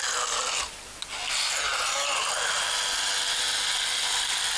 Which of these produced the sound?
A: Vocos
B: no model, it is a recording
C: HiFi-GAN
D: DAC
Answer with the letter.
B